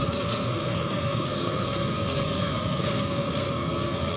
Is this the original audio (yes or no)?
no